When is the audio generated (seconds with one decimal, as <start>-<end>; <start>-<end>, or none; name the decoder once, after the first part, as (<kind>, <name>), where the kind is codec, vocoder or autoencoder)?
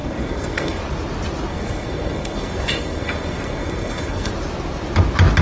0.0-0.8 (codec, SNAC); 1.5-4.3